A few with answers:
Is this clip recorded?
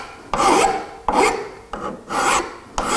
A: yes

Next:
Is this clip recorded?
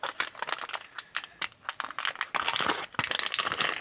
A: yes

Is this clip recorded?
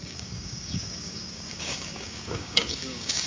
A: no